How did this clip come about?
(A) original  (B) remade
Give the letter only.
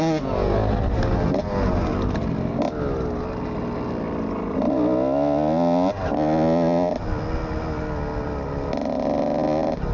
A